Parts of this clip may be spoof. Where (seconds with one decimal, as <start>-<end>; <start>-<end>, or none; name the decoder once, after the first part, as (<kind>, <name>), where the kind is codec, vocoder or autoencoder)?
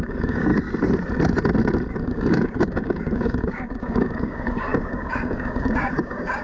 0.0-0.5 (codec, DAC); 1.9-6.4